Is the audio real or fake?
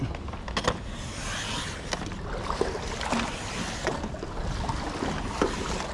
real